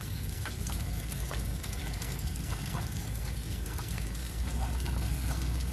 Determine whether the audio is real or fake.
fake